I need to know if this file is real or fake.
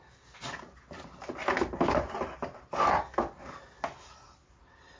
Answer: real